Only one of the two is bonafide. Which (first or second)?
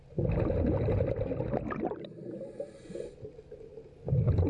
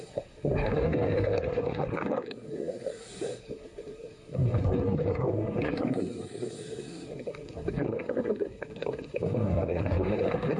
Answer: first